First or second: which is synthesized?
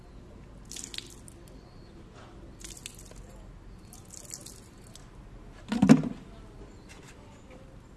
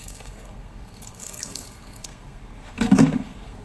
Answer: second